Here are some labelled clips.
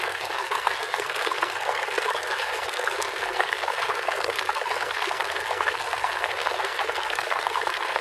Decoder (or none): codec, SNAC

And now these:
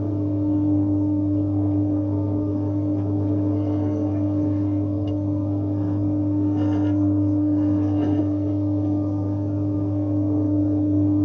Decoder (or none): codec, SNAC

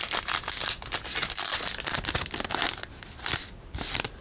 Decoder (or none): none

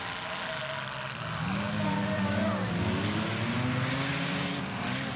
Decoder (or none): none